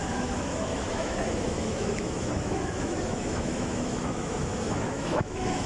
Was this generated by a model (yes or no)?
yes